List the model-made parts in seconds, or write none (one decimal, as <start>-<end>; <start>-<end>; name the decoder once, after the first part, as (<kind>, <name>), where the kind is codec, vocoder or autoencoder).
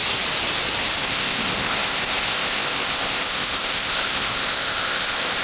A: 1.0-5.4 (codec, ZipCodec)